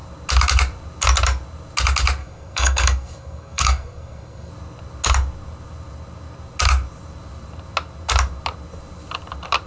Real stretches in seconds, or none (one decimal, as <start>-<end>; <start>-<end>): 0.0-2.2; 4.5-9.7